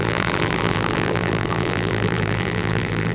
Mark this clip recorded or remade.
remade